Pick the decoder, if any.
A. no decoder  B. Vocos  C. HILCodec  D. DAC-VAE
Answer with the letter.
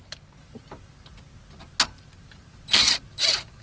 A